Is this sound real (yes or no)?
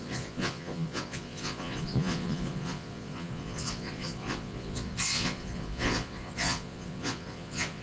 no